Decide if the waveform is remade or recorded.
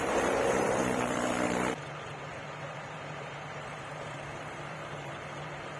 remade